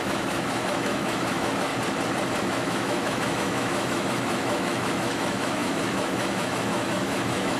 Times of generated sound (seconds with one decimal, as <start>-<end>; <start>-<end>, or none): 0.0-1.7; 2.4-7.6